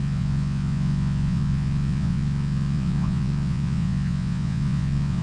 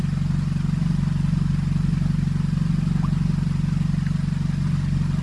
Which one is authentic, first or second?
second